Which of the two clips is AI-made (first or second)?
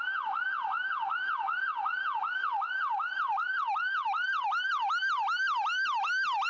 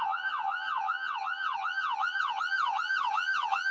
second